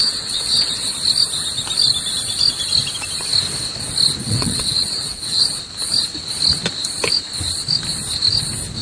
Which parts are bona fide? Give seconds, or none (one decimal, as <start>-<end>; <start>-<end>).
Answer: 0.9-4.2; 5.4-8.8